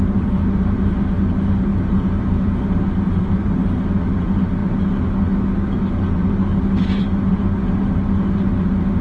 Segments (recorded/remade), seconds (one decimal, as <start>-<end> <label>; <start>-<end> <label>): 0.0-9.0 recorded

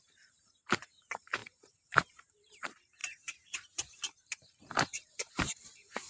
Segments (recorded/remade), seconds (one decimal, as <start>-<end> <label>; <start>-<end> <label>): 0.0-6.1 remade

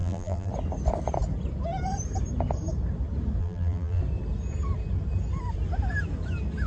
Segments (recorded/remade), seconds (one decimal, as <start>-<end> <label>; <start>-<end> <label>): 0.0-0.5 remade; 0.5-3.4 recorded; 3.4-4.0 remade; 4.0-6.7 recorded

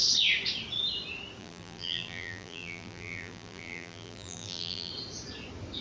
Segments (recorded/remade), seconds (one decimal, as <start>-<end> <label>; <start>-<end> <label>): 0.0-1.4 recorded; 1.4-4.9 remade; 4.9-5.8 recorded

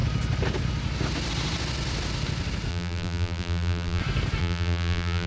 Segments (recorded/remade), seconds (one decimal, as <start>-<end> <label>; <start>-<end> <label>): 0.0-2.7 recorded; 2.7-4.0 remade; 4.0-4.4 recorded; 4.4-5.3 remade

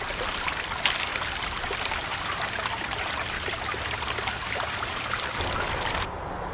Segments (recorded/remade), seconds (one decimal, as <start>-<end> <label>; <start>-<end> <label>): 0.0-1.1 recorded; 1.1-3.6 remade; 3.6-4.4 recorded; 4.4-5.1 remade; 5.1-6.5 recorded